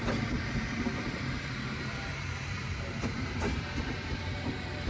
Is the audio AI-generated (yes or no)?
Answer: yes